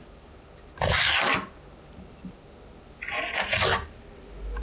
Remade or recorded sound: recorded